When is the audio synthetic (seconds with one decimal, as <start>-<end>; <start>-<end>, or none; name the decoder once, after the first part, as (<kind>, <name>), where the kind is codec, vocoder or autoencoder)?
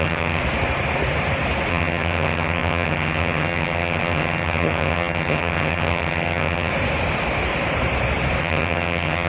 0.0-0.4 (vocoder, HiFi-GAN); 1.7-6.7; 8.4-9.3